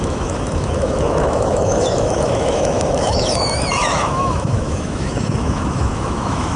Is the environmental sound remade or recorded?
remade